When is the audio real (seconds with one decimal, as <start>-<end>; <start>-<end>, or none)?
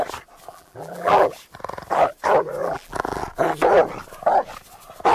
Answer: 0.0-0.5; 1.3-2.6; 3.2-5.1